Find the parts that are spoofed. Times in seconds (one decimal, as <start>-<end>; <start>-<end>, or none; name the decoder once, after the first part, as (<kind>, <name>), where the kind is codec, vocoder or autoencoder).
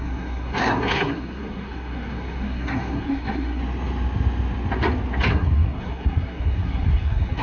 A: 0.0-3.6 (codec, SNAC); 5.3-7.4